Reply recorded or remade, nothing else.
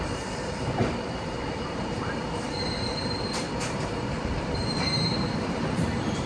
remade